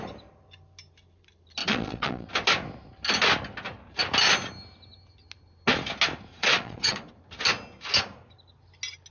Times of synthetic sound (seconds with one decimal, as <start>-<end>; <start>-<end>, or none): 1.6-2.3; 6.3-7.1

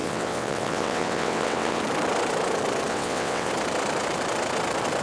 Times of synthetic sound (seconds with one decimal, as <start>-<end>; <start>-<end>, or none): 0.0-1.8; 2.9-3.5

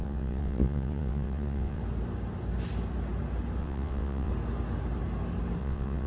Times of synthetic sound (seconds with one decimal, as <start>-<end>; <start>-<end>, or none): 0.0-1.8; 3.6-4.3; 5.6-6.1

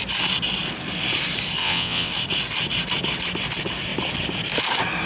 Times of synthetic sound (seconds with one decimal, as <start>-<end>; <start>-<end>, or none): 1.6-2.1

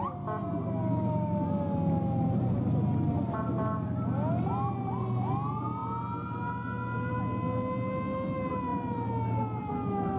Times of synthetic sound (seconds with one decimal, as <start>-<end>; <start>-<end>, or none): none